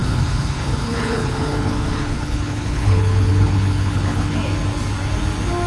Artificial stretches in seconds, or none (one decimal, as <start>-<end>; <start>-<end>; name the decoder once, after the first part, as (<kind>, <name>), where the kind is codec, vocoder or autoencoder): 0.0-4.4 (codec, HILCodec)